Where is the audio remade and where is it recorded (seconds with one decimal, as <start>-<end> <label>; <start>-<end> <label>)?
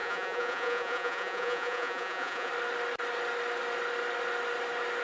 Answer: 0.0-2.5 remade; 2.5-5.0 recorded